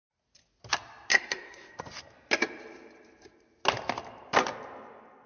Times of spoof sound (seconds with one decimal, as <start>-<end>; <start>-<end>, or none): 1.1-1.8